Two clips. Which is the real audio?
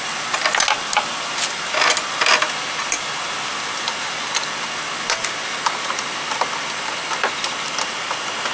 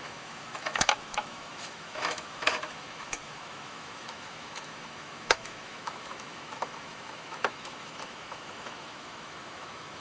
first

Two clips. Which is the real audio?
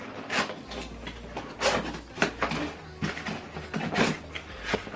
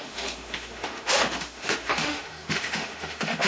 first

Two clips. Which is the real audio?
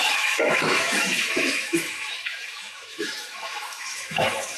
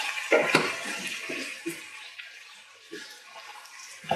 second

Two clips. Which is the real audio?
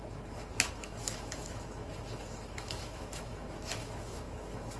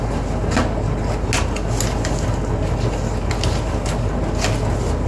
second